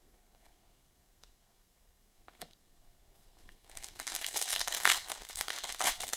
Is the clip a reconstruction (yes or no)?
yes